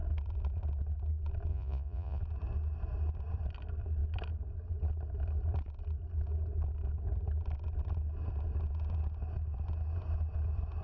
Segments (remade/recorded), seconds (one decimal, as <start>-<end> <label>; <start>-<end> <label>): 0.0-1.5 recorded; 1.5-2.2 remade; 2.2-10.8 recorded